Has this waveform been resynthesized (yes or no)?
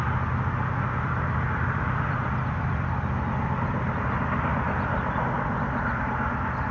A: no